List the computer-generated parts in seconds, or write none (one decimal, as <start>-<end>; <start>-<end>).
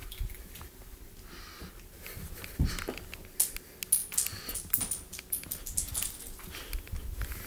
none